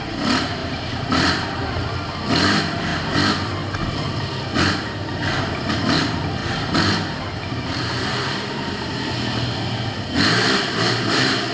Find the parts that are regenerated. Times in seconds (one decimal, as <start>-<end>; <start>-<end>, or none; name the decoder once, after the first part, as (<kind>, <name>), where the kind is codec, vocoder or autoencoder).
0.6-1.9 (vocoder, BigVGAN v2); 6.4-9.5